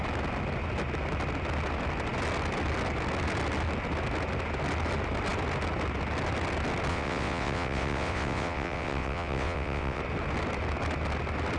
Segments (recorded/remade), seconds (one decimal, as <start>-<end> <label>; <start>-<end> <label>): 0.0-6.9 recorded; 6.9-10.0 remade; 10.0-11.6 recorded